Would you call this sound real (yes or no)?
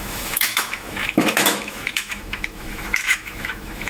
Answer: no